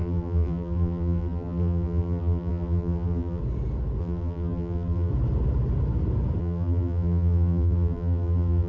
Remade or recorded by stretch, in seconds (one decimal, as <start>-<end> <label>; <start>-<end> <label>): 0.0-3.4 remade; 3.4-4.0 recorded; 4.0-5.1 remade; 5.1-6.4 recorded; 6.4-8.7 remade

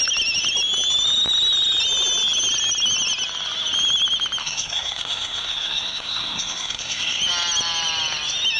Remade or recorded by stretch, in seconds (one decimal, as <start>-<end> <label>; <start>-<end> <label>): 0.0-4.4 recorded; 4.4-7.2 remade; 7.2-8.6 recorded

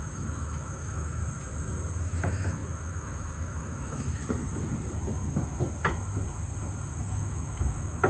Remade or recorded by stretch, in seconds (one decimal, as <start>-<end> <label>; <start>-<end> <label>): 0.0-1.2 remade; 1.2-2.0 recorded; 2.0-4.2 remade; 4.2-7.0 recorded; 7.0-8.1 remade

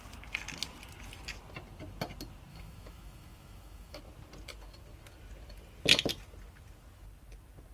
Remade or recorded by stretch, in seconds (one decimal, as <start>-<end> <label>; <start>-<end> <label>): 0.0-2.5 recorded; 2.5-4.0 remade; 4.0-7.7 recorded

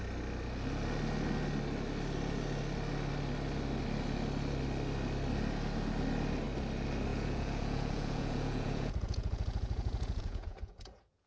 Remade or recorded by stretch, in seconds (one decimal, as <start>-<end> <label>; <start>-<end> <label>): 0.0-7.1 recorded; 7.1-11.3 remade

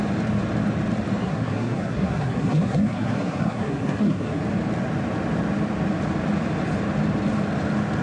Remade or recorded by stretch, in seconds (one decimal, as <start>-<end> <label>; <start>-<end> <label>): 0.0-1.2 recorded; 1.2-4.4 remade; 4.4-8.0 recorded